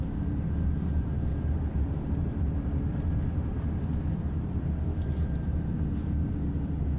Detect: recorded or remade remade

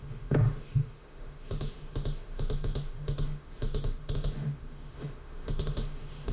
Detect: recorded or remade remade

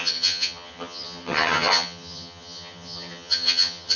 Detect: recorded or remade remade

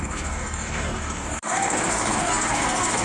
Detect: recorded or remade remade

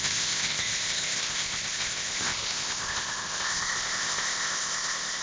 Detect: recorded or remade remade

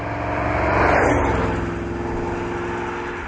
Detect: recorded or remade recorded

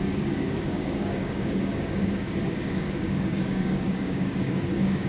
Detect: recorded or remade remade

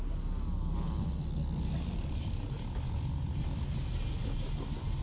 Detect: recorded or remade recorded